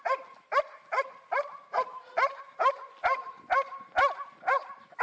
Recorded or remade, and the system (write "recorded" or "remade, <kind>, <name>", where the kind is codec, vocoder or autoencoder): recorded